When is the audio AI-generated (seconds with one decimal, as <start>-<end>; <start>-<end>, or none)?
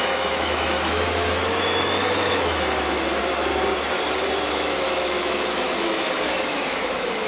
0.0-3.5; 4.5-7.3